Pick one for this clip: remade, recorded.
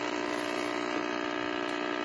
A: recorded